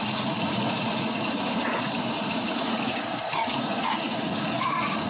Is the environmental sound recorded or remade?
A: remade